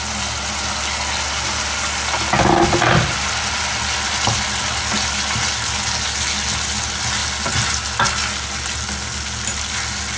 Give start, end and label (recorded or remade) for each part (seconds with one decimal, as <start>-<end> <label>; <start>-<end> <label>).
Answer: 0.0-10.2 recorded